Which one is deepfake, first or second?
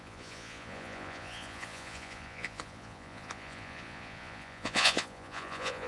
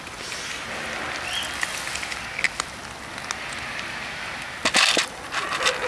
first